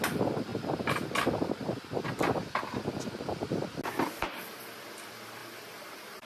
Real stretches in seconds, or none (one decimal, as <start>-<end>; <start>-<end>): 0.0-5.4